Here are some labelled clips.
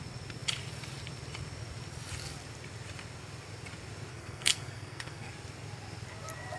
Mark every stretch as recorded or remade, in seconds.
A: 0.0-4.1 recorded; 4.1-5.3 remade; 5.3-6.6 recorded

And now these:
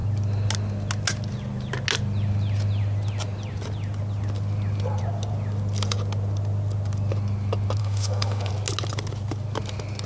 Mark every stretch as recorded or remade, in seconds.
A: 0.0-7.8 recorded; 7.8-8.5 remade; 8.5-10.1 recorded

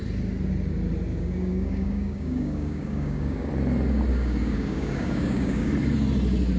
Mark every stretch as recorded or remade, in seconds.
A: 0.0-1.1 recorded; 1.1-3.5 remade; 3.5-4.1 recorded; 4.1-5.7 remade; 5.7-6.6 recorded

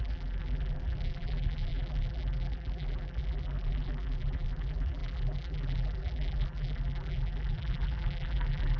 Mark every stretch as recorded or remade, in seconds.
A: 0.0-8.8 remade

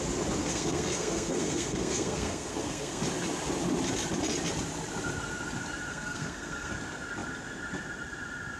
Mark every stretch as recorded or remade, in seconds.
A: 0.0-0.4 recorded; 0.4-3.0 remade; 3.0-5.9 recorded; 5.9-6.7 remade; 6.7-8.6 recorded